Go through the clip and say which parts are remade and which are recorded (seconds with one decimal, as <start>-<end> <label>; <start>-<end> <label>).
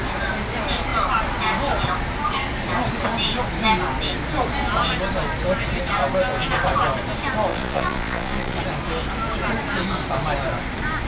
0.0-7.5 recorded; 7.5-8.6 remade; 8.6-11.1 recorded